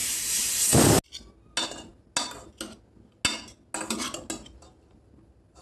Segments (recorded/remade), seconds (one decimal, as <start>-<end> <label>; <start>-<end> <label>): 0.0-0.6 remade; 0.6-5.6 recorded